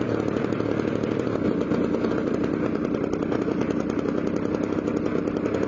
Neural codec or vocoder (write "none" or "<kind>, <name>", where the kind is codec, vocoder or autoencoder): none